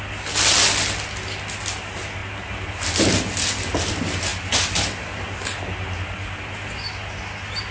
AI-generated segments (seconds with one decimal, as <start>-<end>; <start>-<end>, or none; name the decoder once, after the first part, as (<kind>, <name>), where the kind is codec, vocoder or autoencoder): none